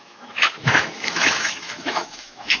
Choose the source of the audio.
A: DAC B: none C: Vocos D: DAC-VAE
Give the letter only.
D